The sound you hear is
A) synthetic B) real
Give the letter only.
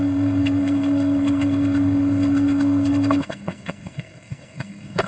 A